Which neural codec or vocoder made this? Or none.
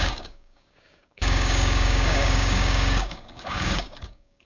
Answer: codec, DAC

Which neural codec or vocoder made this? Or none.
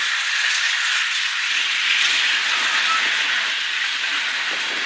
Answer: none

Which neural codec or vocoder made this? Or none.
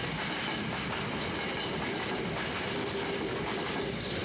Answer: none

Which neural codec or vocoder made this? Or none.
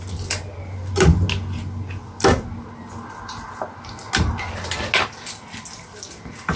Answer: none